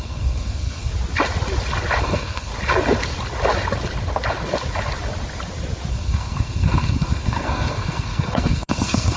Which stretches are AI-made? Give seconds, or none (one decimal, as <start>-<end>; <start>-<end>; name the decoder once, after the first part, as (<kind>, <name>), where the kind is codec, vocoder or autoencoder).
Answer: 0.0-0.9 (codec, SNAC); 2.0-2.5; 5.9-9.2

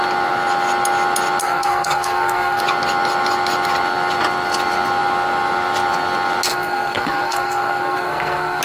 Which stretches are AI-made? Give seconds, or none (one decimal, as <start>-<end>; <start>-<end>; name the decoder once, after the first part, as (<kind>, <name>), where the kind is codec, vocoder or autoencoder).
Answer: 1.4-2.6 (codec, SNAC); 6.5-8.6

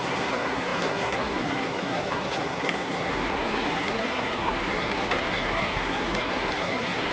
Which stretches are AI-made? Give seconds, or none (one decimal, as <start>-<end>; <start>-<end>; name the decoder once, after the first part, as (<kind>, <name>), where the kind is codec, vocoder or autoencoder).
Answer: 0.0-7.1 (codec, SNAC)

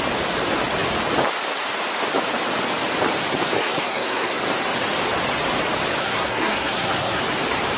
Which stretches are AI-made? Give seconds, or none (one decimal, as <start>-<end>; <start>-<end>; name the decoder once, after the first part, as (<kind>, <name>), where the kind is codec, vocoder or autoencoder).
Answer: 3.6-4.4 (codec, SNAC); 6.0-7.2

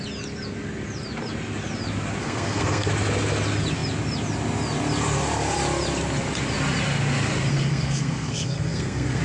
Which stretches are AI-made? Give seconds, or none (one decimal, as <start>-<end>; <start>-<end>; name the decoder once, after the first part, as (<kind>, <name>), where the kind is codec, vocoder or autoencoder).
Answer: 2.2-2.9 (codec, SNAC); 7.5-9.2